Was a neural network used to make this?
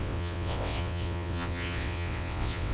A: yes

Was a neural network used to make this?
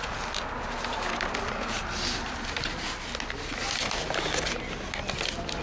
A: no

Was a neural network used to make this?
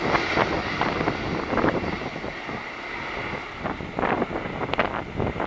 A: no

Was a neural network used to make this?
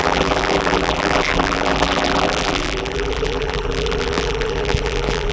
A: yes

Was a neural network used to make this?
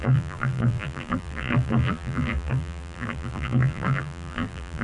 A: yes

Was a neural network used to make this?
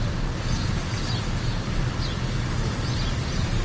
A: no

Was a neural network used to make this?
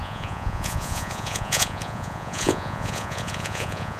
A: yes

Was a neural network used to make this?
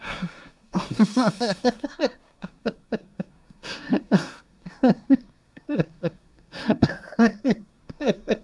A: yes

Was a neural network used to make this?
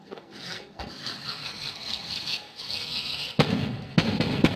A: yes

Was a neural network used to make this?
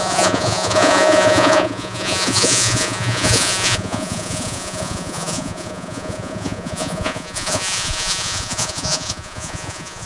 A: yes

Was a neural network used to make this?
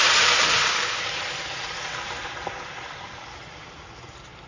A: no